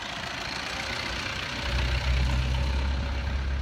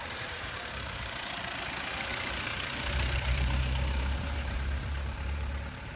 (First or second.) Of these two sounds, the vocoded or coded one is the second